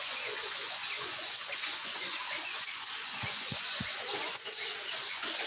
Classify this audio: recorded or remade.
remade